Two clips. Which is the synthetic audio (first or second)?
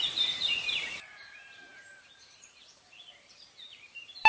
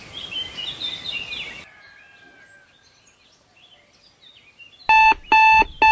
first